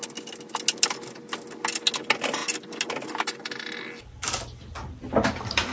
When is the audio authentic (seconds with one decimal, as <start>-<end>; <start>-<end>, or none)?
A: 0.0-5.7